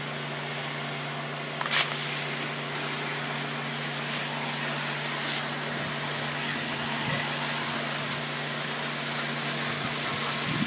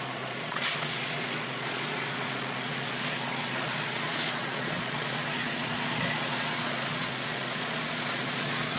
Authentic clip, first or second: first